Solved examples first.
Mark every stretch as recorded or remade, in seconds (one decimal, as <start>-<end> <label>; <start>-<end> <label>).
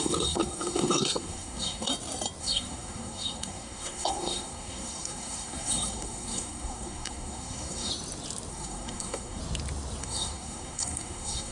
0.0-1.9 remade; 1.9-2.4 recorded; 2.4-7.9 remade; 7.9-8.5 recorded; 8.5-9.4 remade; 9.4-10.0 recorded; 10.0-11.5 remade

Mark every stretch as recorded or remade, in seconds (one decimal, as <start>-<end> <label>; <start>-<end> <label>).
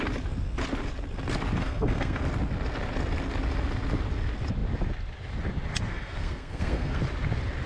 0.0-1.6 recorded; 1.6-2.2 remade; 2.2-5.9 recorded; 5.9-7.0 remade; 7.0-7.7 recorded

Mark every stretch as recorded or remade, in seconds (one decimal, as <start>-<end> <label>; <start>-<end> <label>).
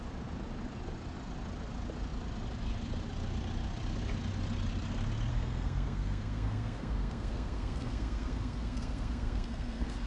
0.0-5.3 recorded; 5.3-10.1 remade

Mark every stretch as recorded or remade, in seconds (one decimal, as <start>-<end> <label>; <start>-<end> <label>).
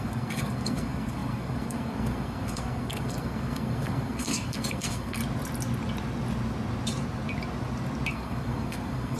0.0-5.2 remade; 5.2-8.1 recorded; 8.1-9.2 remade